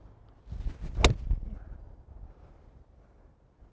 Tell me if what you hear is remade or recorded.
recorded